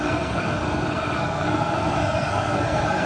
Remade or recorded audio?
remade